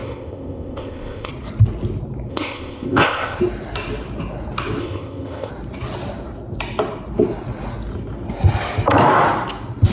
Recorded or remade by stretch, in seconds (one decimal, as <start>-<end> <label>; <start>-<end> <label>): 0.0-1.3 remade; 1.3-2.3 recorded; 2.3-3.4 remade; 3.4-4.8 recorded; 4.8-5.5 remade; 5.5-9.9 recorded